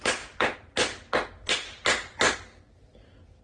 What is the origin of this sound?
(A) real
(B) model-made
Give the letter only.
A